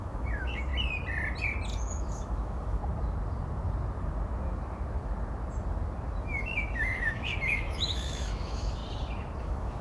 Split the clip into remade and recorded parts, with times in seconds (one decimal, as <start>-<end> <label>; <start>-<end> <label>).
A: 0.0-0.7 remade; 0.7-1.8 recorded; 1.8-2.8 remade; 2.8-6.2 recorded; 6.2-8.8 remade; 8.8-9.4 recorded; 9.4-9.8 remade